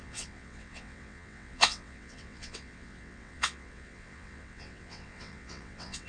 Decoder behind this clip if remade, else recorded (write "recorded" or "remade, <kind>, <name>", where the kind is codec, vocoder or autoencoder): remade, vocoder, WaveNeXt